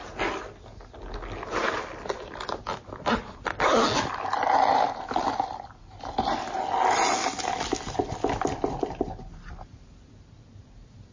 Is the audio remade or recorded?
recorded